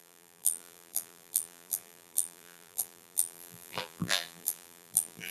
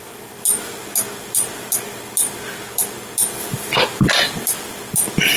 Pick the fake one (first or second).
first